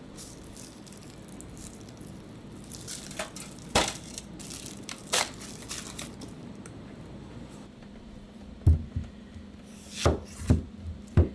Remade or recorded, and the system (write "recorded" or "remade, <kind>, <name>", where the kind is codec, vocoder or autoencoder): recorded